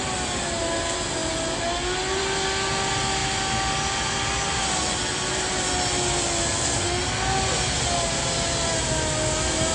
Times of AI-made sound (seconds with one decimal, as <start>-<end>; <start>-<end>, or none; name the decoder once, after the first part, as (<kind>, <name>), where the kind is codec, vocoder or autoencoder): none

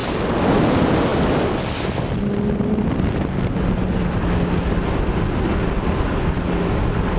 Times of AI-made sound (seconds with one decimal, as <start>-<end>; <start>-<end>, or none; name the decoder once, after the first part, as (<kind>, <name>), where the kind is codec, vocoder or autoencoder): none

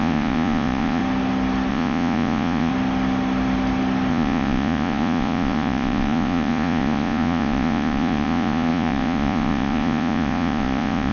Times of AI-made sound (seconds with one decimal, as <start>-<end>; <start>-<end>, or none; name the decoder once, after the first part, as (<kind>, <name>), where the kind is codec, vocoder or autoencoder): 0.0-1.0 (vocoder, Vocos); 1.7-2.7; 4.1-11.1

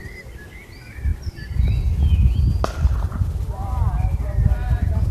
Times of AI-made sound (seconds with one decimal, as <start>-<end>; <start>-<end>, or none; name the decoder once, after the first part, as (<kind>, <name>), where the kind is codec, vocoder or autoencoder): none

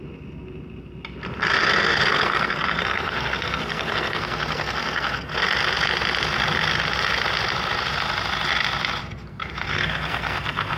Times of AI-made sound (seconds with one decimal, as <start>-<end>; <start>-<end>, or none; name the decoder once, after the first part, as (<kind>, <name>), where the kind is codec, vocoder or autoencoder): 1.6-5.3 (codec, SNAC); 9.0-10.8